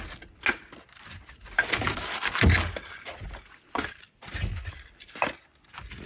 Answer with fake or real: real